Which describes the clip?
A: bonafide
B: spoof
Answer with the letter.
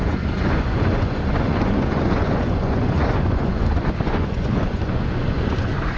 B